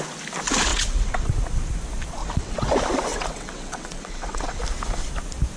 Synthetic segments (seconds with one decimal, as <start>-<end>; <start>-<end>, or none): 0.7-1.3; 2.2-2.7; 3.1-4.6